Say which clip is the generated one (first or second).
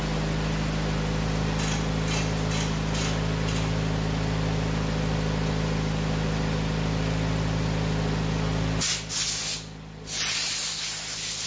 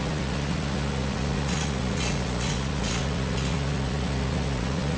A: second